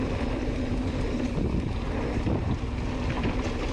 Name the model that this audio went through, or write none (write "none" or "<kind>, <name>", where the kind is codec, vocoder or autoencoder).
none